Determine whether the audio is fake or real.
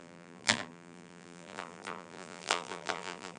fake